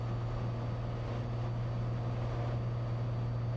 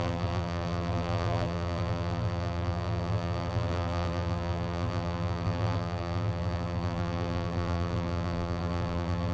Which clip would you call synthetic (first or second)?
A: second